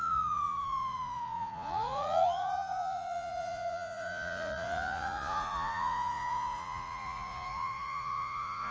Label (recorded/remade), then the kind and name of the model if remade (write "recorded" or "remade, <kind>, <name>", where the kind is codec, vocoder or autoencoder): remade, vocoder, Vocos